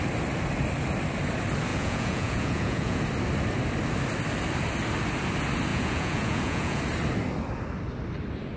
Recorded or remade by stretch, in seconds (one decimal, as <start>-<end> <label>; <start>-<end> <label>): 0.0-1.7 recorded; 1.7-3.0 remade; 3.0-5.7 recorded; 5.7-6.8 remade; 6.8-8.6 recorded